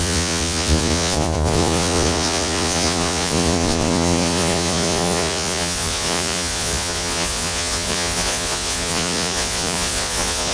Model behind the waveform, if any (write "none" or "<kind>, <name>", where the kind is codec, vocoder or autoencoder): vocoder, Vocos